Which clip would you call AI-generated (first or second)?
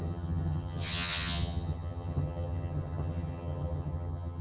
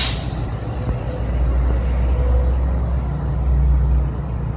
first